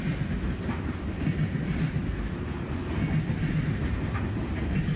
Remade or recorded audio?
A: recorded